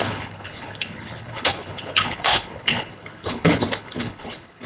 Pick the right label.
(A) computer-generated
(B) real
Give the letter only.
A